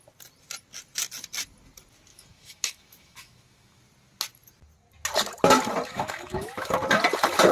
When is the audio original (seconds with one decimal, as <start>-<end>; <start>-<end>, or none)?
0.0-2.1; 3.8-5.9; 6.7-7.5